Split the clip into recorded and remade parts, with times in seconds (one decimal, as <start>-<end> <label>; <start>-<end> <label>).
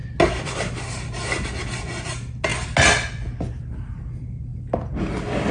0.0-5.5 recorded